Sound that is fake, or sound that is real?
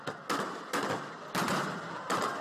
real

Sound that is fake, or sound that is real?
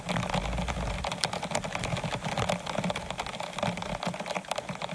real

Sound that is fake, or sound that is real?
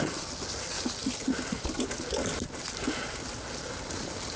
real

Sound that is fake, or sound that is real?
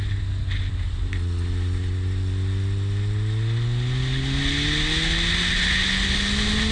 real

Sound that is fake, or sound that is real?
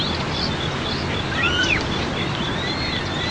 real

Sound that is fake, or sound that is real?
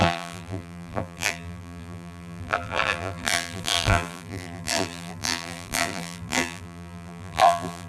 fake